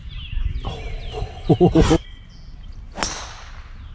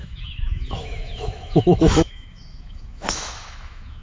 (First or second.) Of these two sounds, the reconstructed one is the second